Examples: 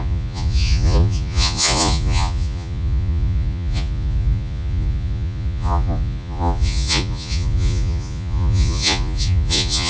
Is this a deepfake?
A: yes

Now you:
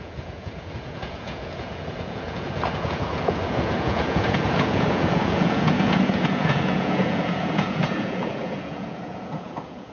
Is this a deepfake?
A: yes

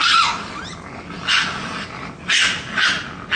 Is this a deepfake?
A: no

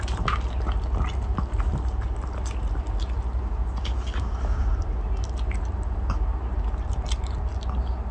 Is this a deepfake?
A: no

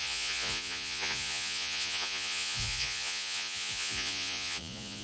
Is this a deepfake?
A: yes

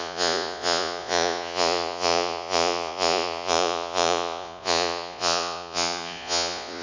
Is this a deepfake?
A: yes